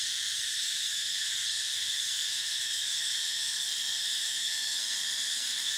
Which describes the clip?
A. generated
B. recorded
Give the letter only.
A